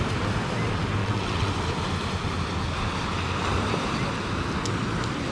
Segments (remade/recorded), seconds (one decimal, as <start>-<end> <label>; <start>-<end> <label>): 0.0-1.0 recorded; 1.0-1.5 remade; 1.5-5.3 recorded